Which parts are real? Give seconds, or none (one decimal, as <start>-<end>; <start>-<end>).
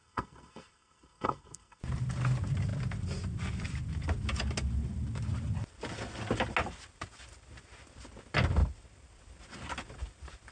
1.8-10.5